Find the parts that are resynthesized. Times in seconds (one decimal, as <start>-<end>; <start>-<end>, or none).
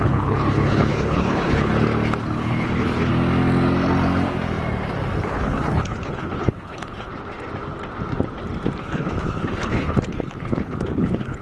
0.0-1.7; 2.2-3.1; 5.2-7.1; 8.8-11.4